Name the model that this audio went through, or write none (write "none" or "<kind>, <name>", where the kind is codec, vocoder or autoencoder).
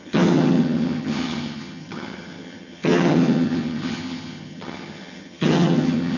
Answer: vocoder, HiFi-GAN